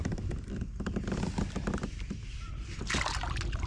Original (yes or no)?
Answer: yes